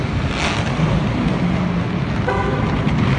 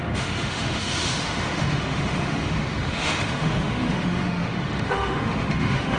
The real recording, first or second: first